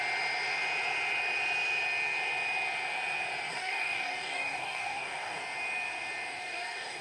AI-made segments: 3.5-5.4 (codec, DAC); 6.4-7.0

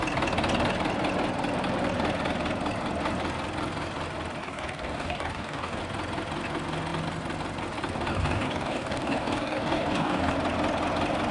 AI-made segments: 4.4-5.8 (codec, DAC); 8.1-10.3

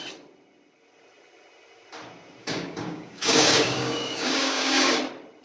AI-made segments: 2.4-5.0 (codec, DAC)

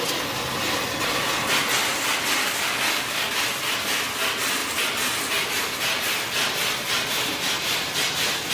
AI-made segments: 2.4-3.4 (codec, DAC)

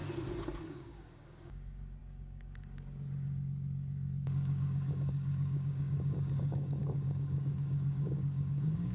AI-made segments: 0.6-8.9 (codec, DAC)

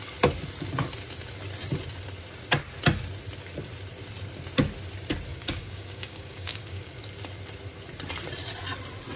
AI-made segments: 5.3-7.0 (codec, DAC)